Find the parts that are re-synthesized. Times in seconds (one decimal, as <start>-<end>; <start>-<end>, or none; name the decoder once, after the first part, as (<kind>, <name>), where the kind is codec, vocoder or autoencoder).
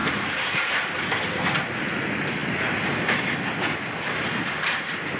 none